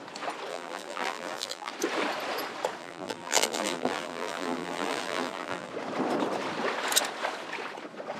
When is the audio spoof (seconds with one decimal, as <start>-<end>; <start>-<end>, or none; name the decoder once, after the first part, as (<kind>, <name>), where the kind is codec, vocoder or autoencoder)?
0.5-1.7 (vocoder, BigVGAN v2); 2.8-5.7